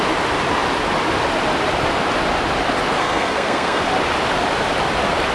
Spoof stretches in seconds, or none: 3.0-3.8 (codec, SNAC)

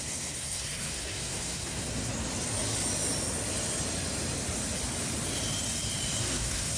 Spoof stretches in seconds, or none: 0.0-2.1 (codec, SNAC); 6.2-6.8

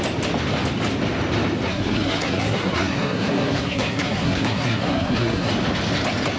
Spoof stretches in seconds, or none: 1.7-5.5 (codec, SNAC)

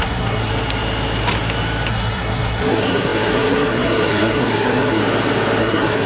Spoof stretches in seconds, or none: 0.0-0.5 (codec, SNAC); 1.9-5.0; 5.6-6.1

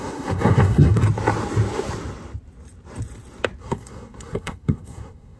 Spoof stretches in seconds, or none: 0.0-1.0 (codec, SNAC); 3.6-5.4

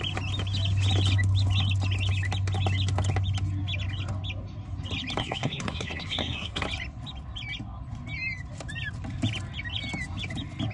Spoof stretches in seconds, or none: 5.2-6.6 (codec, SNAC)

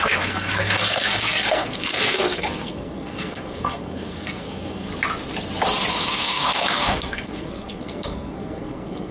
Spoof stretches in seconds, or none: 0.0-4.9 (codec, SNAC); 5.9-9.1

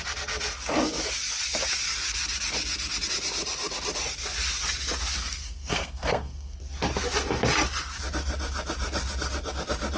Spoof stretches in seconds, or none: 5.2-6.6 (codec, SNAC)